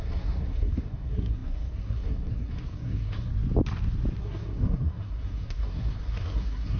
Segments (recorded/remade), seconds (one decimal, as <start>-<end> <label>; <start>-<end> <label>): 0.0-3.3 remade; 3.3-4.2 recorded; 4.2-6.8 remade

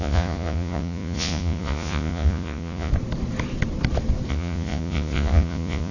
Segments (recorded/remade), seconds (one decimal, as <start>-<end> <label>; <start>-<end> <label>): 0.0-2.9 remade; 2.9-4.3 recorded; 4.3-5.9 remade

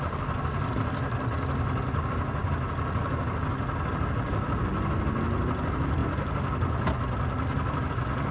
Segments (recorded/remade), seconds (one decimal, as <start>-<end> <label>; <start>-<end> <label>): 0.0-8.3 recorded

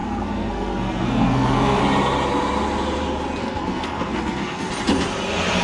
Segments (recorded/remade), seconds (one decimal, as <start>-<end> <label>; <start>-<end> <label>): 0.0-1.8 remade; 1.8-3.4 recorded; 3.4-4.7 remade; 4.7-5.6 recorded

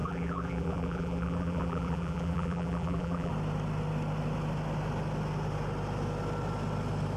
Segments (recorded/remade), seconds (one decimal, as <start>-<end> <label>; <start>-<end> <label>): 0.0-3.3 remade; 3.3-7.2 recorded

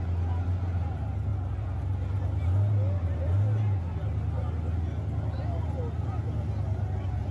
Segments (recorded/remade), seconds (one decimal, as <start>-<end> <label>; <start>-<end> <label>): 0.0-7.3 recorded